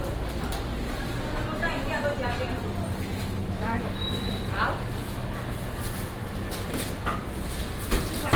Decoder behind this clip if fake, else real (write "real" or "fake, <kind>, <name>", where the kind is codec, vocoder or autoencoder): real